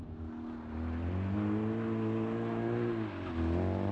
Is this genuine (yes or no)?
yes